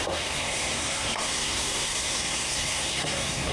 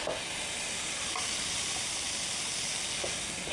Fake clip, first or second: first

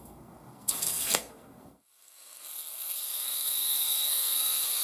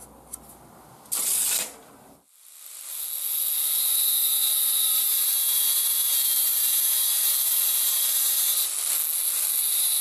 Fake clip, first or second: first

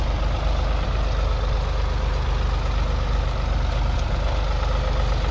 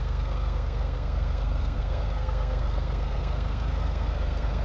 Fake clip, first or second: second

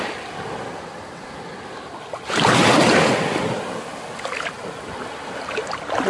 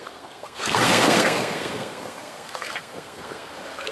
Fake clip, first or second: second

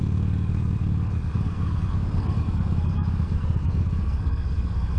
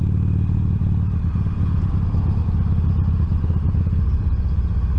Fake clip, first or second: first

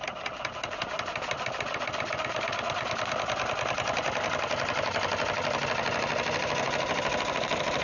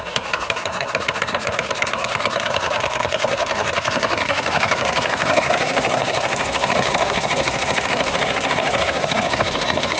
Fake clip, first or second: second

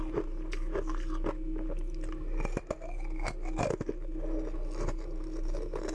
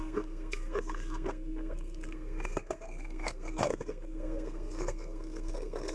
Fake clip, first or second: second